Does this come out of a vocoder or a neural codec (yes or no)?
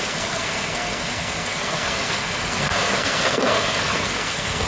yes